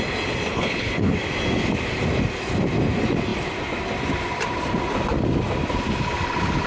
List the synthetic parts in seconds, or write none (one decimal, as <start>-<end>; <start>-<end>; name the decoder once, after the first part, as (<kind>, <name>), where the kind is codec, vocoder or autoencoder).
0.5-1.1 (codec, HILCodec)